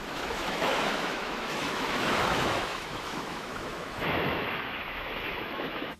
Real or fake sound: fake